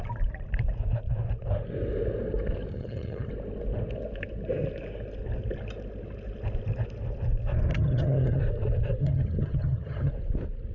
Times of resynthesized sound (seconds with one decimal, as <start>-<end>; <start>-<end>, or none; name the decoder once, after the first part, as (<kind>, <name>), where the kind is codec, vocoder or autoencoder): 2.7-3.3 (vocoder, HiFi-GAN); 7.7-8.4; 9.0-10.1